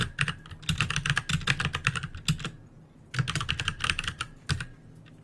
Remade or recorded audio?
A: recorded